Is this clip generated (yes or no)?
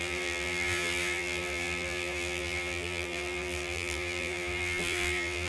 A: yes